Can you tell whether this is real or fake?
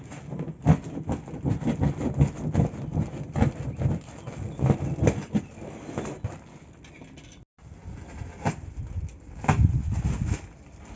real